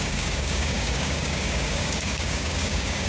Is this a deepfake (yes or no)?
yes